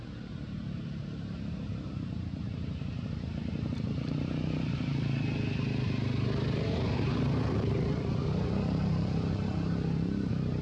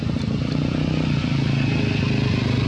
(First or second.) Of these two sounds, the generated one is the first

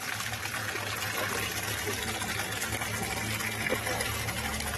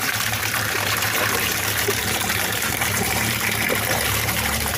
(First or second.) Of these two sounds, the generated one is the second